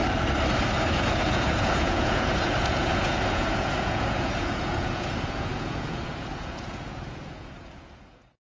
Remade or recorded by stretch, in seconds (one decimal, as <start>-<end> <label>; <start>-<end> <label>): 0.0-0.9 recorded; 0.9-8.4 remade